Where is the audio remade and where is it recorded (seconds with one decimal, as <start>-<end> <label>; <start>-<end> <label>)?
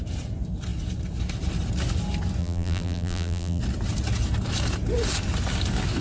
0.0-2.4 recorded; 2.4-3.6 remade; 3.6-6.0 recorded